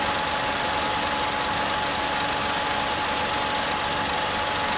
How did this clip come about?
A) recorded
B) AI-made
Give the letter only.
A